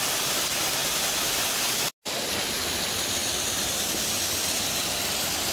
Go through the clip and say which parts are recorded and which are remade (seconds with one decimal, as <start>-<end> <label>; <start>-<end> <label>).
0.0-5.5 recorded